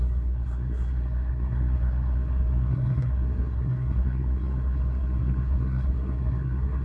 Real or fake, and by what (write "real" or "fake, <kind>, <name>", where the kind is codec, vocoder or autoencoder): fake, codec, SNAC